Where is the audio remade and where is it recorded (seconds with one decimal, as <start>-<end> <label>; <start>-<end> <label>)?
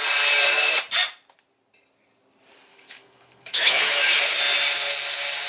0.0-2.7 recorded; 2.7-4.4 remade; 4.4-5.5 recorded